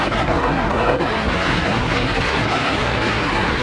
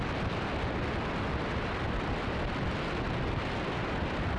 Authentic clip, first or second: second